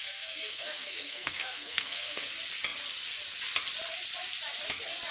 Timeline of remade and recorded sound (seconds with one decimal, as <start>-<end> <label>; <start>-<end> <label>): 0.0-2.3 remade; 2.3-5.1 recorded